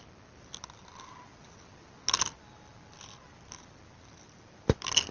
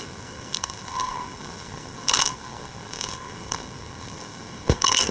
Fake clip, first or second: second